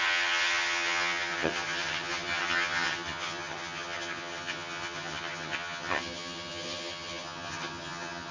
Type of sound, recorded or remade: remade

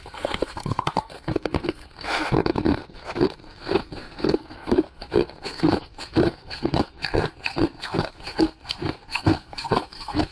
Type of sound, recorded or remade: remade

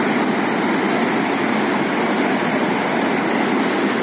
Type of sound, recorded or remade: recorded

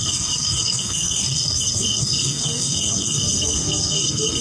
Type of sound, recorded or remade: remade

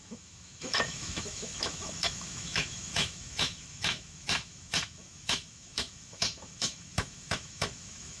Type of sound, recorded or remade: remade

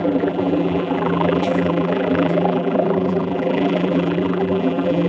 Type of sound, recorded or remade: remade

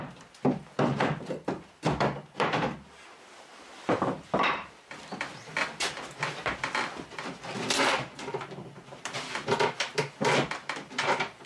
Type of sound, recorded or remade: remade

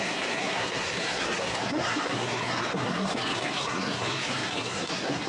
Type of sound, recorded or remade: remade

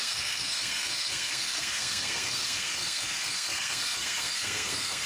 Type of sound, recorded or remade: remade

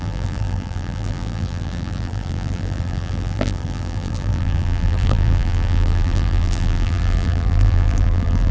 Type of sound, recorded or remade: remade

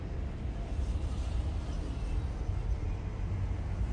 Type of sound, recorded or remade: recorded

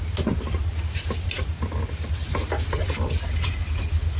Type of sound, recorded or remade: recorded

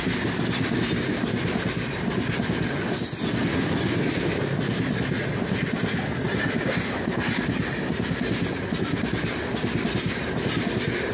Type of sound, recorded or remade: recorded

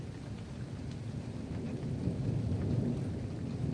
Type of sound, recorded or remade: recorded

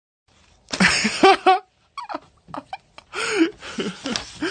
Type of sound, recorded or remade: recorded